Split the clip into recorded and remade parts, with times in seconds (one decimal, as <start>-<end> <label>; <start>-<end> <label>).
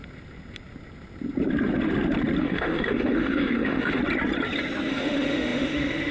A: 0.0-2.4 recorded; 2.4-4.0 remade; 4.0-4.9 recorded; 4.9-6.1 remade